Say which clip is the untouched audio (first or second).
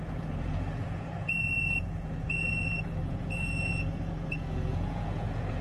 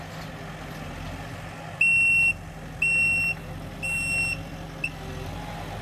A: second